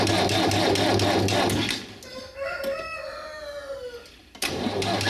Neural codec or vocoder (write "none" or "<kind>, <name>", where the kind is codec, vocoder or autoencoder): none